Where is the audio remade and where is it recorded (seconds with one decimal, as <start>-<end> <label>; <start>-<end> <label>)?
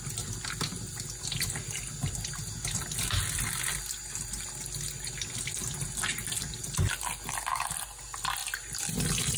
0.0-9.4 recorded